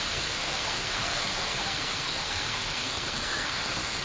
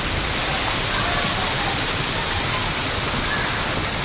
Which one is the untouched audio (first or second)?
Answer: second